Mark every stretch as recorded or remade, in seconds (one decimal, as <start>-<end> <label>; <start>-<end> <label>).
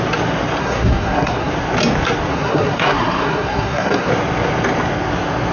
0.0-0.6 recorded; 0.6-1.5 remade; 1.5-2.3 recorded; 2.3-4.1 remade; 4.1-5.5 recorded